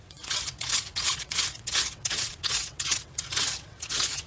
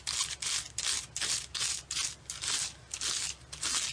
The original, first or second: second